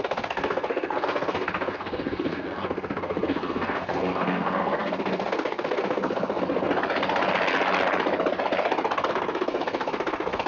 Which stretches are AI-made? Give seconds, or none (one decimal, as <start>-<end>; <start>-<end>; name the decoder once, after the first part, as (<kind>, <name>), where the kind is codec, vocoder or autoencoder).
0.0-6.7 (codec, SNAC); 9.1-10.5